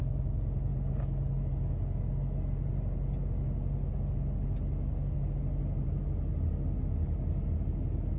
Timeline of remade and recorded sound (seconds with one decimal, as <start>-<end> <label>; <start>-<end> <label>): 0.0-8.2 recorded